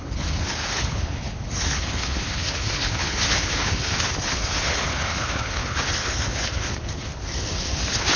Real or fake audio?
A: fake